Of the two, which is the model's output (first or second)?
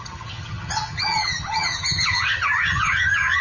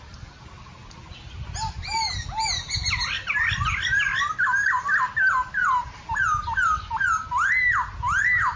first